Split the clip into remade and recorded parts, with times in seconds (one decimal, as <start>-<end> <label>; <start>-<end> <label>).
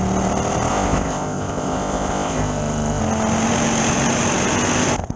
0.0-0.7 recorded; 0.7-3.0 remade; 3.0-5.2 recorded